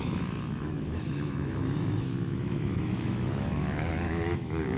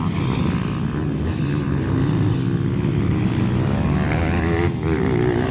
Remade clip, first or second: first